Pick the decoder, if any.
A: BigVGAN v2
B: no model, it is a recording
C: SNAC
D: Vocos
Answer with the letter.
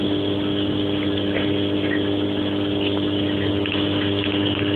B